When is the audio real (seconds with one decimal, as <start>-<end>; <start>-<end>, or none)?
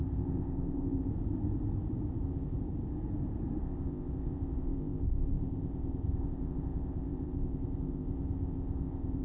1.1-2.2; 2.6-3.6